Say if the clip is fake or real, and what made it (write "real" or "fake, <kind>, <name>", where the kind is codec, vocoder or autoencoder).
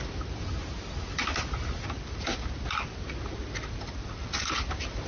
real